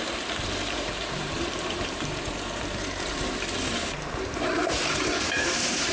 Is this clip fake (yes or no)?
yes